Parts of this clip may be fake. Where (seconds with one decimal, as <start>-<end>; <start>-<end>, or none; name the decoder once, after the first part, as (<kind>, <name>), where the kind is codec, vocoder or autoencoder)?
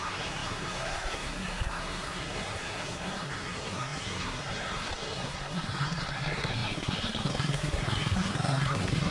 0.0-9.1 (codec, SNAC)